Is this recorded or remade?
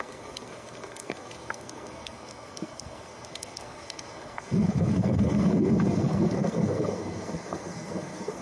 remade